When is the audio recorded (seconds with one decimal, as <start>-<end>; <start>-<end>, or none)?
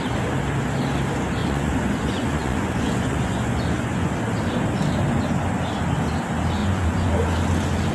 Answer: 0.0-1.4; 4.1-6.6; 7.1-7.9